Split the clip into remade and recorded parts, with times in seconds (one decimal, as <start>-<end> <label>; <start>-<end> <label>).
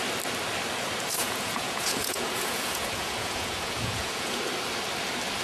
0.0-1.2 recorded; 1.2-4.4 remade; 4.4-5.4 recorded